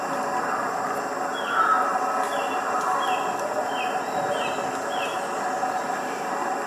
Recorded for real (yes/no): yes